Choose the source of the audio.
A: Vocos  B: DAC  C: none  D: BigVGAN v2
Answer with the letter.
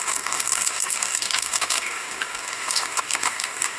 B